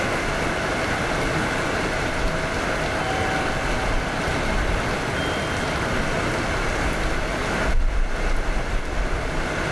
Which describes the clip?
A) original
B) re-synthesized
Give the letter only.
A